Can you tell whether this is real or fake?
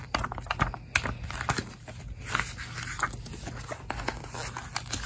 real